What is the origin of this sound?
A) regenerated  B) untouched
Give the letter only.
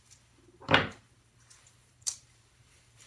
A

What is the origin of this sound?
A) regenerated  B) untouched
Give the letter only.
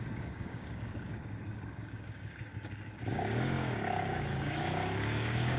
A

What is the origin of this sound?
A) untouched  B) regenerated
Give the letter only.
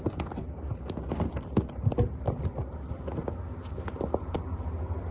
A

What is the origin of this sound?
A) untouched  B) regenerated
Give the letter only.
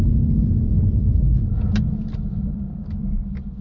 A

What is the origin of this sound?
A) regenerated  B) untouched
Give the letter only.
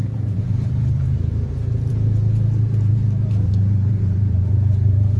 A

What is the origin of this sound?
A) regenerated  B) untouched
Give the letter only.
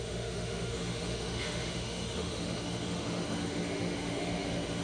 A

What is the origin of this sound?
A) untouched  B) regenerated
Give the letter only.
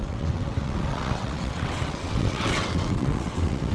B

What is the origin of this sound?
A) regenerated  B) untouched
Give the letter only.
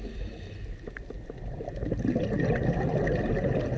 B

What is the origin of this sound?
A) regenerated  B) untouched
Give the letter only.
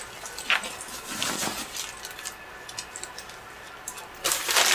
B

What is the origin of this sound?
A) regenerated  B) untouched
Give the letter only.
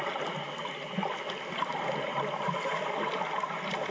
B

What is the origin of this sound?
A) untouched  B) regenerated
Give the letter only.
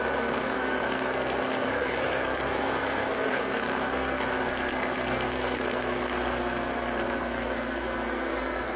B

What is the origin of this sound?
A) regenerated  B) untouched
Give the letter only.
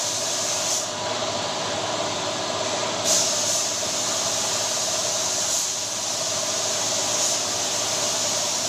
B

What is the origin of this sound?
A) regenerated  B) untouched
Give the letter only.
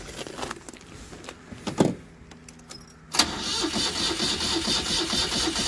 B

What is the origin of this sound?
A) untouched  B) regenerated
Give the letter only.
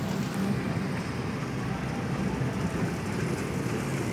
B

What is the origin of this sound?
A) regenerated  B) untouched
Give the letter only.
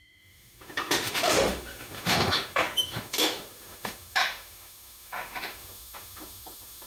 A